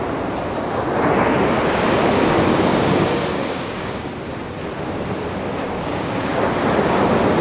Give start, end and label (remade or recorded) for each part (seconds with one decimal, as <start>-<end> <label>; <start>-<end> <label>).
0.0-2.7 recorded; 2.7-4.1 remade; 4.1-5.6 recorded; 5.6-6.3 remade; 6.3-7.4 recorded

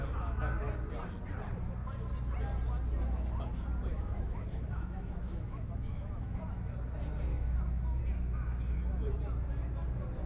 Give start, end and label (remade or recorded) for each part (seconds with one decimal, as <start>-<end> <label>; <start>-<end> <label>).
0.0-3.9 recorded; 3.9-6.4 remade; 6.4-7.3 recorded; 7.3-8.0 remade; 8.0-10.3 recorded